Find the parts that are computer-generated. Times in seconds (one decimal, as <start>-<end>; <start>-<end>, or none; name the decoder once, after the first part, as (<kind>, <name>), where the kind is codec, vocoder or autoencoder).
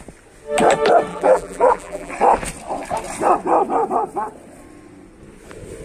1.1-2.1 (vocoder, BigVGAN v2)